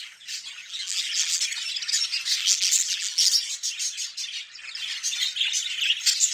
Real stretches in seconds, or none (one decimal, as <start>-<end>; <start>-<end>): 0.0-0.6; 1.4-2.4; 3.3-6.3